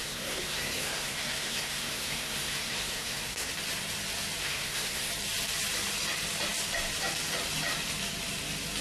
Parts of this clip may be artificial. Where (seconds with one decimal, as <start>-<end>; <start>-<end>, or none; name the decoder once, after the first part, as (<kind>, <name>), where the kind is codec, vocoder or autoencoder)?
0.0-3.5 (codec, SNAC); 4.4-5.1